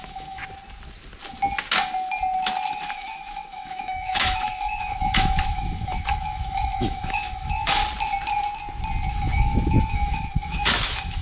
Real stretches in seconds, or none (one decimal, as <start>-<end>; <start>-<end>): 0.4-2.8; 7.8-9.1